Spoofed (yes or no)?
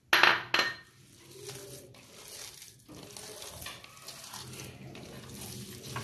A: no